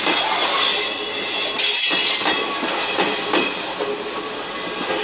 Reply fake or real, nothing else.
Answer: real